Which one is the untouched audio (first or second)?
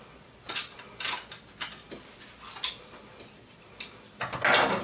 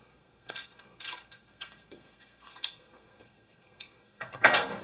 first